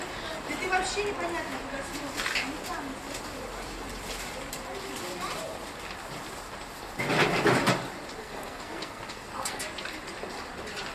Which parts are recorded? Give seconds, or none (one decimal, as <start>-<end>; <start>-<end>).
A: 0.0-8.2; 9.6-10.9